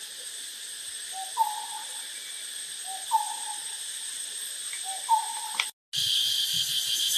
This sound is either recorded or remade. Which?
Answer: recorded